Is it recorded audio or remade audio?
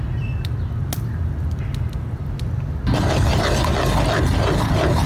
recorded